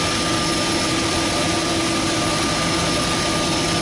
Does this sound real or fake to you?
real